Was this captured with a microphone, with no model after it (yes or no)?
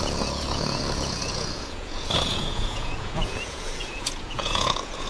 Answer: no